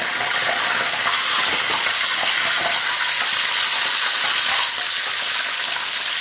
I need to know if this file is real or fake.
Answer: real